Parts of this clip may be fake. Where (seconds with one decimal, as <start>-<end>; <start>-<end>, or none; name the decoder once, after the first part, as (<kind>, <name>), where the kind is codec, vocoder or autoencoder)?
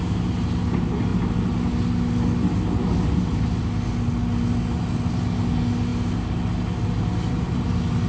none